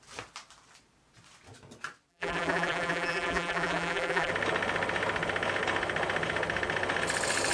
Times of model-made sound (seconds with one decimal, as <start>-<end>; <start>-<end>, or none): 2.1-4.3